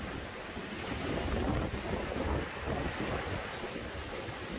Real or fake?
real